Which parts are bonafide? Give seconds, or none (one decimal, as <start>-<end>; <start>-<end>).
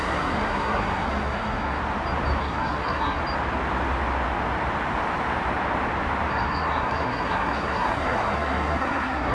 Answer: 1.8-2.4; 3.2-6.3